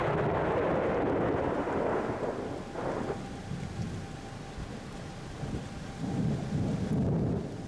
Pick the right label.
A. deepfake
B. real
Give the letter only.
B